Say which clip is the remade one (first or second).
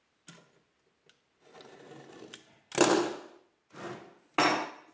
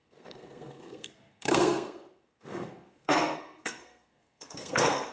second